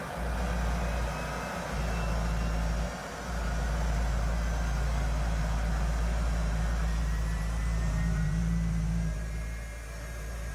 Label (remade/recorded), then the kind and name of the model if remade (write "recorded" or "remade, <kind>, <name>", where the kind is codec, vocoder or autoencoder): recorded